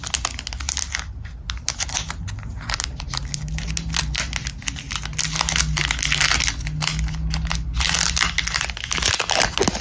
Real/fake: real